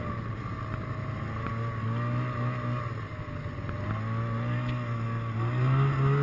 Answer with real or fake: real